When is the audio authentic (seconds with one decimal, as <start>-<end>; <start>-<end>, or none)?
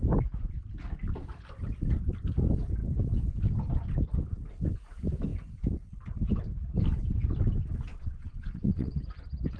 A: 0.0-7.9; 9.0-9.6